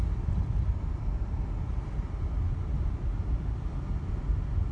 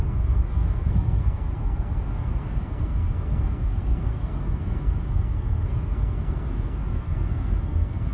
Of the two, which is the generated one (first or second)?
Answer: second